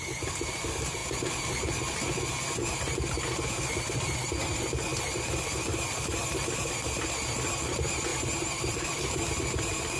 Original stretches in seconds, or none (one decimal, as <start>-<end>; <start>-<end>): 1.0-3.7